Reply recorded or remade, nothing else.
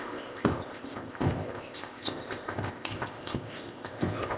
remade